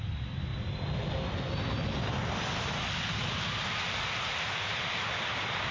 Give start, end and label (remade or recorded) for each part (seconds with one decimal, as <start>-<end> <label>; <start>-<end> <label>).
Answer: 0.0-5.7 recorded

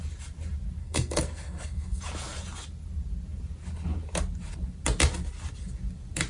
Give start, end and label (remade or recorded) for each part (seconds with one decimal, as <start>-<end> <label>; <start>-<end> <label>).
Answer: 0.0-0.8 recorded; 0.8-2.0 remade; 2.0-6.3 recorded

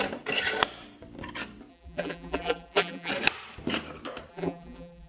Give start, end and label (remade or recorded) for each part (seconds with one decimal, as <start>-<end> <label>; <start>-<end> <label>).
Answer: 0.0-1.7 recorded; 1.7-3.1 remade; 3.1-4.3 recorded; 4.3-5.1 remade